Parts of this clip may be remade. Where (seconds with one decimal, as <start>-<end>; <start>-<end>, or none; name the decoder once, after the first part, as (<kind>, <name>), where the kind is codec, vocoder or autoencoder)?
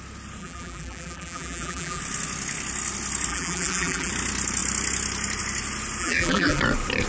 0.4-2.0 (vocoder, BigVGAN v2); 3.3-4.1; 6.0-6.6